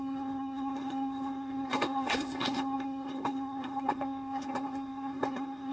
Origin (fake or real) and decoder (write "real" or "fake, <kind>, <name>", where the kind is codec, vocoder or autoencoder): fake, codec, SNAC